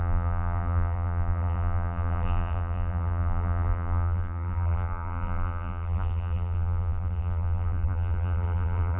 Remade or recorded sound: remade